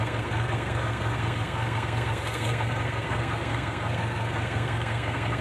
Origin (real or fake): fake